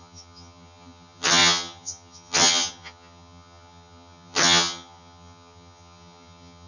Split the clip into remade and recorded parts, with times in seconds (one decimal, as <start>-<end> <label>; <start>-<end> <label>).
0.0-6.7 remade